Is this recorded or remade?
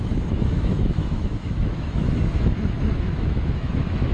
remade